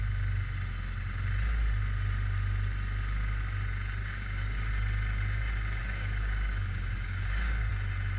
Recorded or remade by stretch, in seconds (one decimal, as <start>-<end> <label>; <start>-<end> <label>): 0.0-4.0 recorded; 4.0-4.7 remade; 4.7-5.8 recorded; 5.8-7.7 remade; 7.7-8.2 recorded